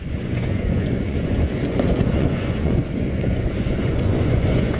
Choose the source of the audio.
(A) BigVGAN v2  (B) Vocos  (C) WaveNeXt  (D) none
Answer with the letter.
B